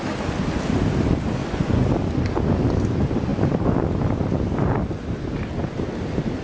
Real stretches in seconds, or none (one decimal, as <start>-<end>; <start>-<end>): 0.0-1.4; 1.9-6.4